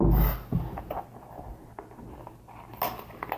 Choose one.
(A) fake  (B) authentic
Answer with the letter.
B